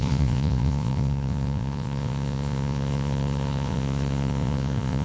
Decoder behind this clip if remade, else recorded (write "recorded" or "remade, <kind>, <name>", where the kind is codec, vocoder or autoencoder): remade, vocoder, Vocos